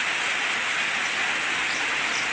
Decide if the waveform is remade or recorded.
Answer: recorded